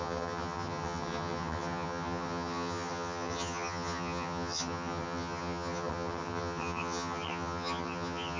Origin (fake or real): fake